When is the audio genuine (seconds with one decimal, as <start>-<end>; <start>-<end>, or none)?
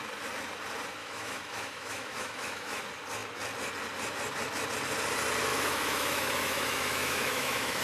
0.0-1.0; 2.8-5.5